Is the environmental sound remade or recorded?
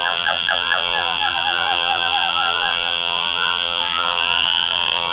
remade